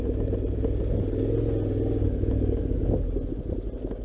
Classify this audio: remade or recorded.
recorded